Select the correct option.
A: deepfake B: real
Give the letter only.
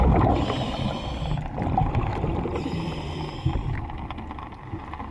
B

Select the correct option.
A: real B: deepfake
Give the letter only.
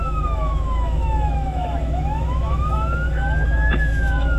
B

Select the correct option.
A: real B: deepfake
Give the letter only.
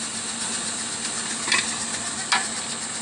A